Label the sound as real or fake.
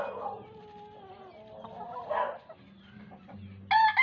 real